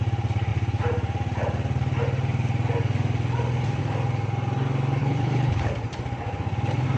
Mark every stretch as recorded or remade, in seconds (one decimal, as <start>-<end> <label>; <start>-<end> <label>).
0.0-5.0 recorded; 5.0-5.7 remade; 5.7-7.0 recorded